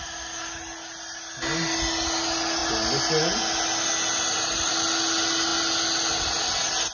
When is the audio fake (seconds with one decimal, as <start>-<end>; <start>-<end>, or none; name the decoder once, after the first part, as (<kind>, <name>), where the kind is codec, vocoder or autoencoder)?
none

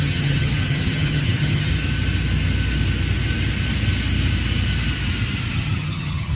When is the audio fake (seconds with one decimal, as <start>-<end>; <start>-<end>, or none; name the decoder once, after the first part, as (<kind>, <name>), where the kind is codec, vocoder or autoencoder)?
0.0-1.7 (vocoder, HiFi-GAN); 5.5-6.4

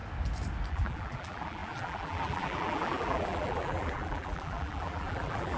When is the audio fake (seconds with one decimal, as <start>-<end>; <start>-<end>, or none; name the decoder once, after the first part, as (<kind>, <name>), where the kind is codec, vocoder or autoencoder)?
0.7-5.6 (vocoder, BigVGAN v2)

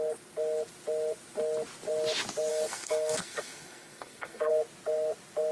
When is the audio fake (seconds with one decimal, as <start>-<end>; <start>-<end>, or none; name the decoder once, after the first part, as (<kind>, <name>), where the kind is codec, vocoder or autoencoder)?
2.5-4.5 (codec, SNAC)

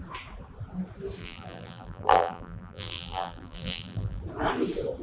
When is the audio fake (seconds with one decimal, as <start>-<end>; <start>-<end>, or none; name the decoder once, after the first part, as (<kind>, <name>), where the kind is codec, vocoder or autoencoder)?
1.2-4.2 (vocoder, BigVGAN v2)

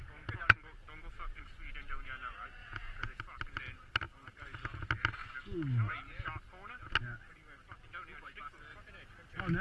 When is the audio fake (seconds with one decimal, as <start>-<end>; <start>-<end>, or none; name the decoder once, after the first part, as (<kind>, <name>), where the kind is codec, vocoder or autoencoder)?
2.6-3.2 (vocoder, Vocos)

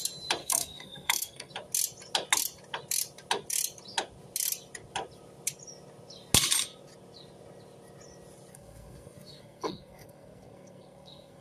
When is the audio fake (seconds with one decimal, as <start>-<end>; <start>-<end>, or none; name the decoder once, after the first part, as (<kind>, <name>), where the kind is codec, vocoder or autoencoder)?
0.4-1.5 (codec, SNAC); 8.5-11.4